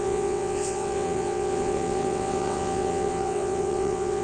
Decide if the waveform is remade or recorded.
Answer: remade